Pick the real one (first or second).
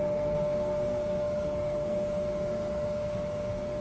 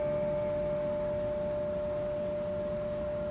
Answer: second